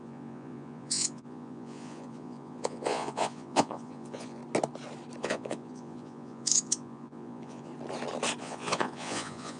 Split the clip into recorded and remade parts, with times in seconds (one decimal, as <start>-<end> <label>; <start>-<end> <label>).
0.0-4.4 remade; 4.4-5.2 recorded; 5.2-7.7 remade; 7.7-8.4 recorded; 8.4-9.6 remade